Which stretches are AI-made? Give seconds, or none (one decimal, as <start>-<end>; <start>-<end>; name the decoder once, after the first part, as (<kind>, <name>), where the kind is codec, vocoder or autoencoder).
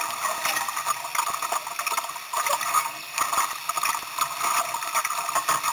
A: 2.7-3.2 (codec, SNAC)